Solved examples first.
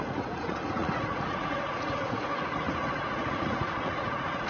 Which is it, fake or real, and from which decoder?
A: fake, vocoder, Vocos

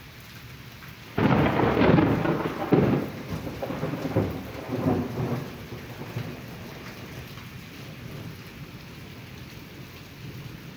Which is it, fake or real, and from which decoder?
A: real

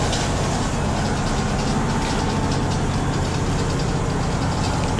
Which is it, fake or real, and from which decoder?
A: real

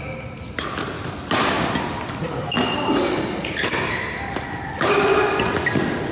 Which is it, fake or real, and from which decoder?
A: real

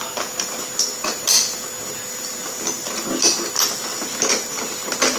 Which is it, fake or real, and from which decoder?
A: real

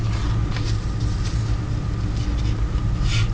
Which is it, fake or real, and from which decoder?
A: real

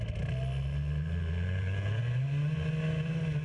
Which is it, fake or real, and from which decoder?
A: real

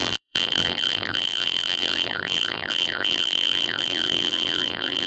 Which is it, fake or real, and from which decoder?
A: fake, vocoder, BigVGAN v2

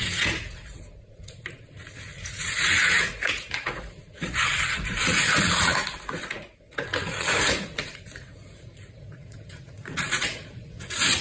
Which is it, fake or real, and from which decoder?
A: fake, vocoder, Vocos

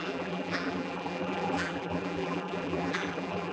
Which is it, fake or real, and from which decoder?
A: fake, vocoder, BigVGAN v2